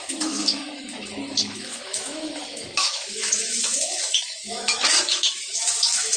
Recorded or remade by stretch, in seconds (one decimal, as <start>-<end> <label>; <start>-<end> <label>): 0.0-6.2 remade